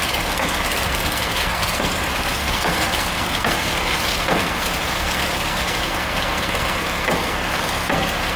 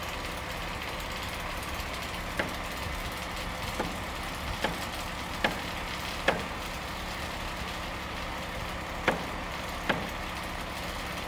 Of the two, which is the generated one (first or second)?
first